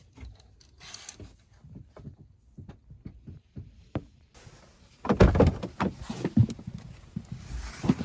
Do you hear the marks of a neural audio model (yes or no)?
no